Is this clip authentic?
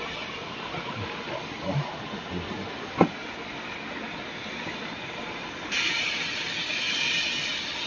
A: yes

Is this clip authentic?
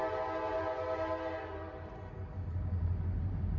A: yes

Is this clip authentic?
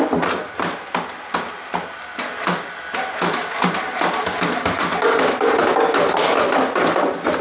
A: yes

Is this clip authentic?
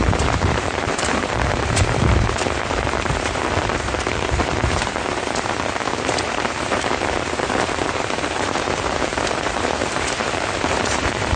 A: no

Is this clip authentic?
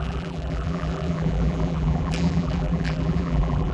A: no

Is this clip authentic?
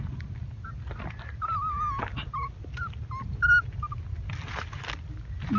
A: yes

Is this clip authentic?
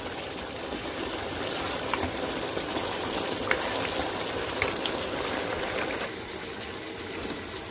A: yes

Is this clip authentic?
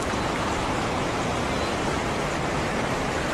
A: no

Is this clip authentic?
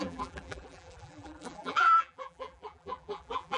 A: no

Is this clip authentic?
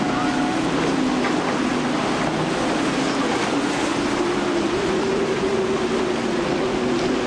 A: yes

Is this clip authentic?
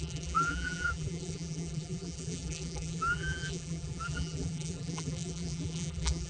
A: no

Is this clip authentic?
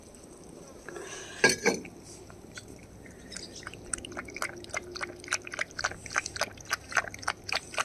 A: yes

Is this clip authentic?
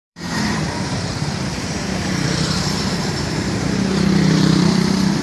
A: no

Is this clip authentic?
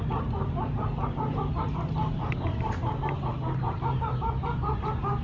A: no